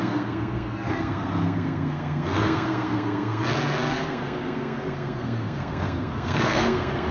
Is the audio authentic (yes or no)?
no